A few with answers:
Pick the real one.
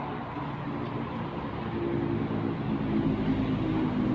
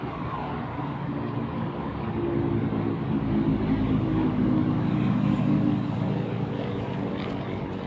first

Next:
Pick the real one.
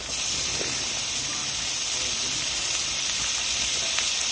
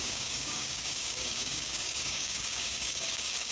first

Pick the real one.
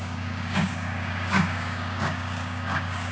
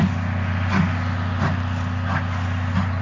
second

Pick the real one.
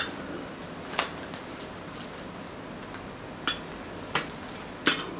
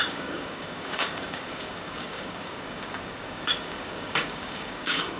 first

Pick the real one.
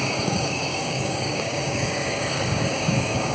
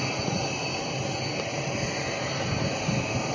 second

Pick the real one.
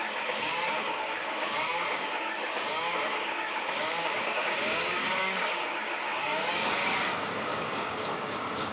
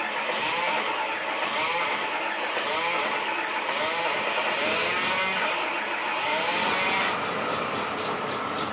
second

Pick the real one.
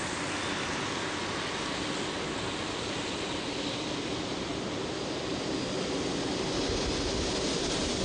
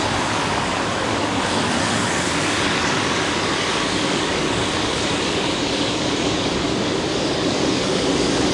first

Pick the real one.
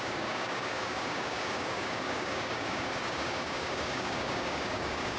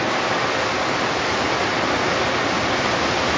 second